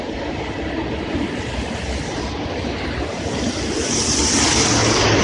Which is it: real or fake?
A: real